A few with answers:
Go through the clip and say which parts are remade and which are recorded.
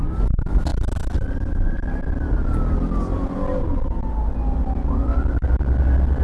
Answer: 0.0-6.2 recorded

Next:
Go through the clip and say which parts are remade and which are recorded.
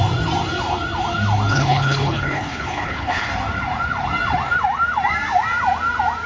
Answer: 0.0-1.5 recorded; 1.5-3.3 remade; 3.3-6.3 recorded